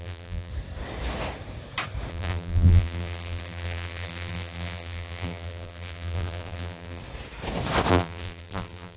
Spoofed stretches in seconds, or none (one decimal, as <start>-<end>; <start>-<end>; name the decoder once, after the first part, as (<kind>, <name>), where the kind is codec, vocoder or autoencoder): 0.0-0.5 (vocoder, BigVGAN v2); 2.1-7.0; 7.9-9.0